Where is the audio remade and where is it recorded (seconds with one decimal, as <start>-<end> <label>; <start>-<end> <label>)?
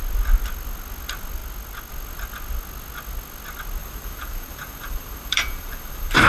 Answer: 0.0-3.8 recorded; 3.8-6.3 remade